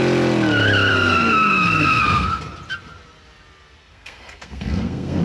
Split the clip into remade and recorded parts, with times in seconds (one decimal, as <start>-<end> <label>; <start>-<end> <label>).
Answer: 0.0-0.9 recorded; 0.9-2.4 remade; 2.4-3.8 recorded; 3.8-5.2 remade